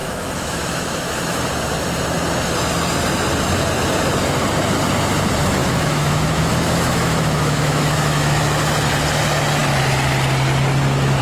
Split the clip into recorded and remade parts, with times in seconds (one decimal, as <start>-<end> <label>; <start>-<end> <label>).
0.0-1.5 remade; 1.5-5.6 recorded; 5.6-8.4 remade; 8.4-11.2 recorded